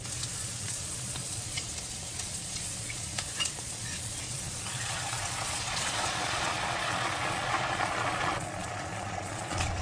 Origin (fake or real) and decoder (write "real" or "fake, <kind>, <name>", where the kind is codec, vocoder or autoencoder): fake, vocoder, Vocos